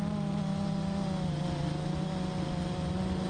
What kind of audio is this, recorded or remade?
recorded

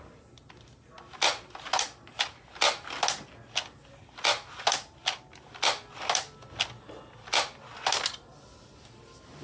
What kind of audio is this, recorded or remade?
recorded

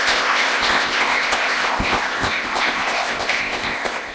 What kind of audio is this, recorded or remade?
remade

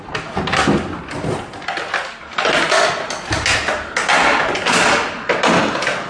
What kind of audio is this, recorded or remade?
recorded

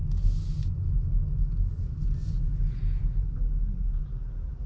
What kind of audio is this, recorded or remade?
recorded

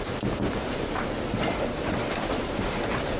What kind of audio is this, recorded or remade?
remade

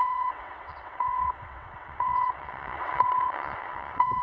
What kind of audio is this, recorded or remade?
remade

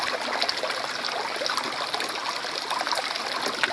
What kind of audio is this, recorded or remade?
recorded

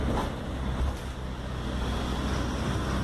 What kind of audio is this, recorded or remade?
recorded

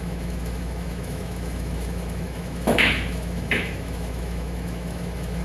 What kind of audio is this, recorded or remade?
remade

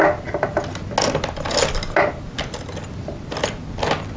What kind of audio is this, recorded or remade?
recorded